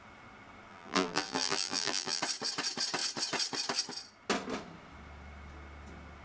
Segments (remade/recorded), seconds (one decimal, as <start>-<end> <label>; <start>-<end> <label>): 0.0-0.7 recorded; 0.7-2.2 remade; 2.2-6.2 recorded